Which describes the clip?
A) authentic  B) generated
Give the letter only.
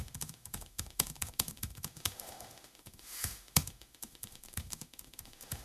B